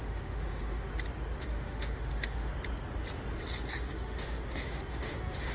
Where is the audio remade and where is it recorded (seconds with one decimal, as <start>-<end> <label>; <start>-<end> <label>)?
0.0-0.9 remade; 0.9-1.4 recorded; 1.4-2.5 remade; 2.5-3.8 recorded; 3.8-5.5 remade